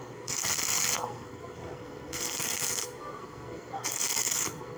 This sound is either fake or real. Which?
fake